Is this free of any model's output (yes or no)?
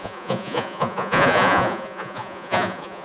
no